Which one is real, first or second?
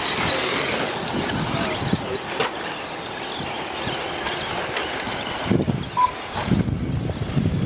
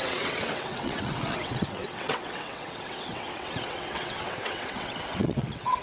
first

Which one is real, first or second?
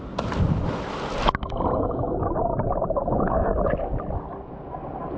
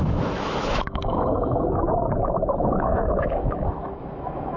first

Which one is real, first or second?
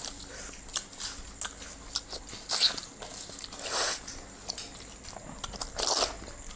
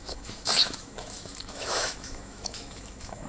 first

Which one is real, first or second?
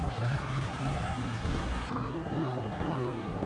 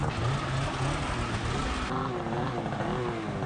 second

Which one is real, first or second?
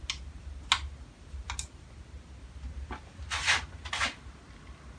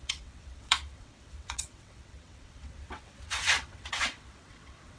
first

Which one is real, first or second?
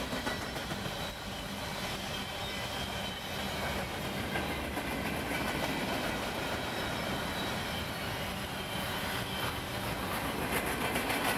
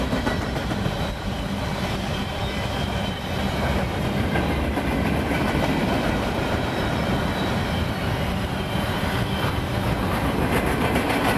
first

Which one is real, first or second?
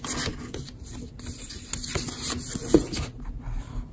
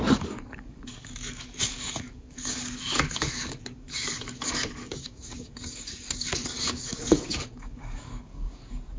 first